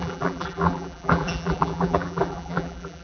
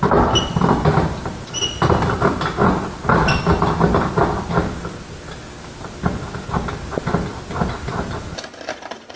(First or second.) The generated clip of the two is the first